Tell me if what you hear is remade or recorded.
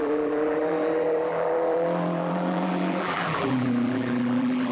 remade